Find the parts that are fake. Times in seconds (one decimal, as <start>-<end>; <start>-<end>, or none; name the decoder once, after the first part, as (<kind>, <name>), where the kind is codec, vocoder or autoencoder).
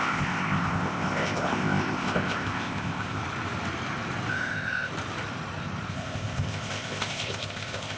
0.0-3.2 (codec, ZipCodec); 4.3-4.9; 5.9-8.0